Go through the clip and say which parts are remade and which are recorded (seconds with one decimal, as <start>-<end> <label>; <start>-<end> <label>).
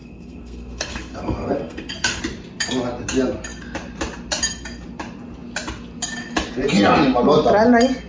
0.0-2.2 remade; 2.2-8.1 recorded